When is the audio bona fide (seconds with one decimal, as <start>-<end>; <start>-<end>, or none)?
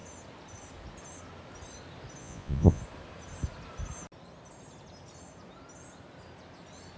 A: 0.0-2.2; 2.8-7.0